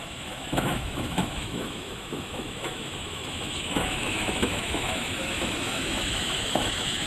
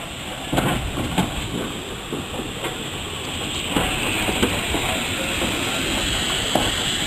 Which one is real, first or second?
second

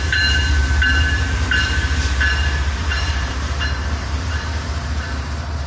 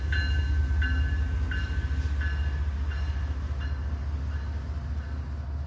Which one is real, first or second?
second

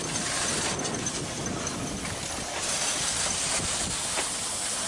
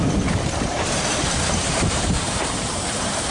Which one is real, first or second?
first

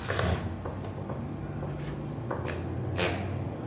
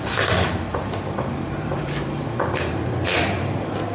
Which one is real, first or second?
first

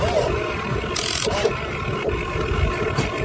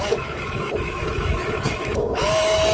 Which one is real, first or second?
first